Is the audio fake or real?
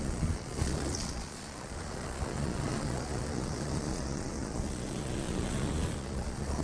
fake